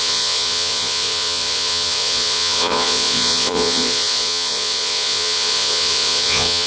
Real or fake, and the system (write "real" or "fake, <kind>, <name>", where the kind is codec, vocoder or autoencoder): fake, vocoder, Vocos